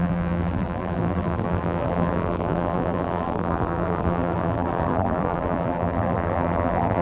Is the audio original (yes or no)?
no